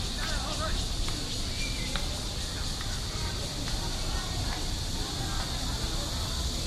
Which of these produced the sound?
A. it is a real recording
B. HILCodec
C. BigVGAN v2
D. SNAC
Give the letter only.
A